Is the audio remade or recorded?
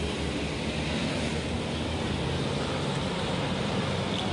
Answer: recorded